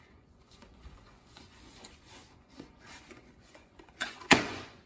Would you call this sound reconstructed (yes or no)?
yes